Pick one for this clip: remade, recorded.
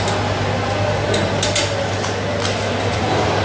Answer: recorded